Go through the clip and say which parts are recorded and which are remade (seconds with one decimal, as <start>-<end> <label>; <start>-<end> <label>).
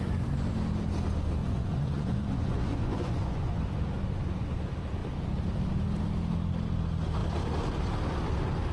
0.0-1.4 recorded; 1.4-3.6 remade; 3.6-8.7 recorded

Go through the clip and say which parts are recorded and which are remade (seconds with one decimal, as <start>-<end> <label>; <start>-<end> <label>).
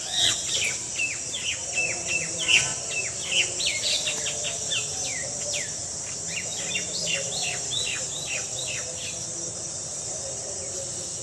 0.0-11.2 recorded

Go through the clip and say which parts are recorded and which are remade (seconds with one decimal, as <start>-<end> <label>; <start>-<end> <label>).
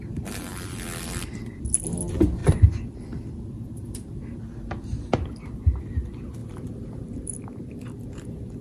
0.0-0.5 recorded; 0.5-1.6 remade; 1.6-2.4 recorded; 2.4-4.4 remade; 4.4-6.4 recorded; 6.4-7.3 remade; 7.3-8.6 recorded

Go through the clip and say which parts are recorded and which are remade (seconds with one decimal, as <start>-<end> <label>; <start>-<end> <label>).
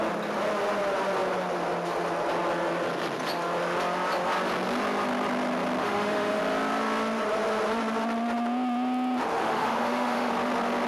0.0-5.8 recorded; 5.8-6.4 remade; 6.4-9.4 recorded; 9.4-10.3 remade; 10.3-10.9 recorded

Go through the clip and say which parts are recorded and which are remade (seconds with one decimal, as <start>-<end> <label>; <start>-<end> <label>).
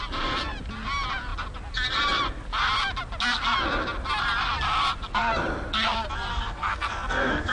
0.0-6.3 recorded; 6.3-7.5 remade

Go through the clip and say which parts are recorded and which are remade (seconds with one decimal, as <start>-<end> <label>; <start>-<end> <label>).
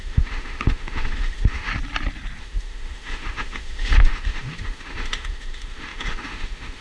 0.0-1.7 remade; 1.7-2.4 recorded; 2.4-6.8 remade